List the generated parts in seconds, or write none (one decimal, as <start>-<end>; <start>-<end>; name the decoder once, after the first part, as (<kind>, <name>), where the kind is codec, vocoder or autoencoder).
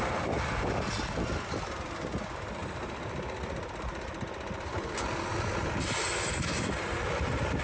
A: 0.0-7.6 (vocoder, BigVGAN v2)